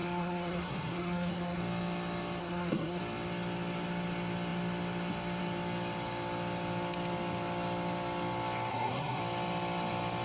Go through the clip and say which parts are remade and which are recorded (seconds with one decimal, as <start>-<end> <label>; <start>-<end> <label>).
0.0-1.6 remade; 1.6-2.4 recorded; 2.4-3.0 remade; 3.0-8.7 recorded; 8.7-9.2 remade; 9.2-10.2 recorded